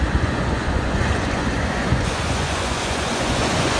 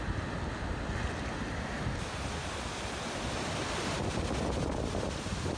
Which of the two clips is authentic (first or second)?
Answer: second